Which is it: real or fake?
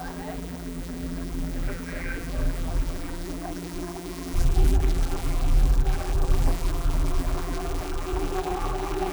fake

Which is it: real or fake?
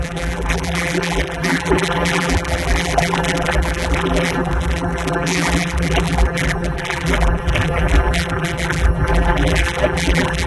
fake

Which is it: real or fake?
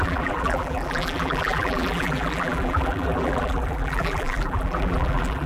fake